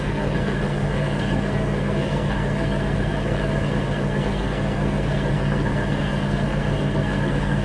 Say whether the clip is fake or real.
fake